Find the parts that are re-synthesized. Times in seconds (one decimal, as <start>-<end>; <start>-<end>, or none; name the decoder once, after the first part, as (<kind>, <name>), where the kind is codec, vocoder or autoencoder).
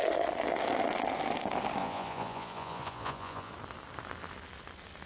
1.8-3.5 (vocoder, Vocos)